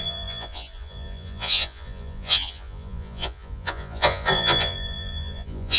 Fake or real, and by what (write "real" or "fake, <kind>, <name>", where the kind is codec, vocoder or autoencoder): fake, vocoder, Vocos